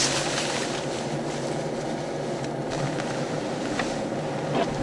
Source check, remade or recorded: recorded